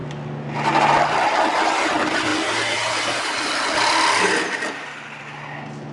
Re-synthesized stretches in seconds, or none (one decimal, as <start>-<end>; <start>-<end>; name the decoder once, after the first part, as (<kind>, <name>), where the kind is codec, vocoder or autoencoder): none